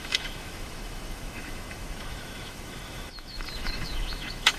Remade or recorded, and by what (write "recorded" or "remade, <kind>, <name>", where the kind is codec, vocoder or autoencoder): remade, autoencoder, DAC-VAE